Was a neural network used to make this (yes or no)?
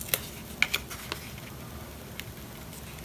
no